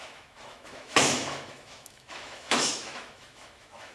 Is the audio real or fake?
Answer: fake